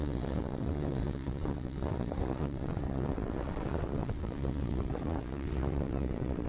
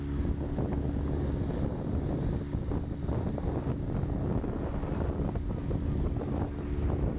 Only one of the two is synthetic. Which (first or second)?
first